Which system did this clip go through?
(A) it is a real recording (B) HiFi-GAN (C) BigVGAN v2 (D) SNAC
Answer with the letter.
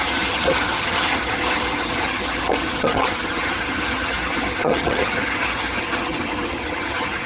B